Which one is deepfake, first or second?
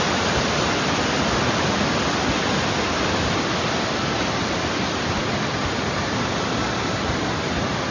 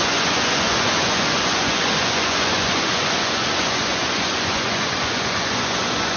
second